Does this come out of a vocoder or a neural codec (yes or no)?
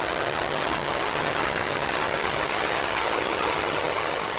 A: yes